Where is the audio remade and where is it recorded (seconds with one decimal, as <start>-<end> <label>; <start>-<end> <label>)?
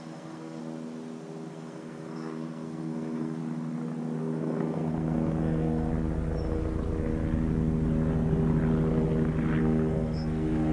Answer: 0.0-0.6 remade; 0.6-1.5 recorded; 1.5-3.4 remade; 3.4-4.2 recorded; 4.2-5.9 remade; 5.9-9.6 recorded; 9.6-10.7 remade